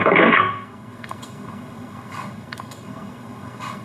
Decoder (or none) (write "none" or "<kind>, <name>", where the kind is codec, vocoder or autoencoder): codec, SNAC